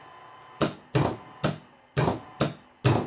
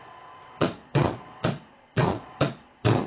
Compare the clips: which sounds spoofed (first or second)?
second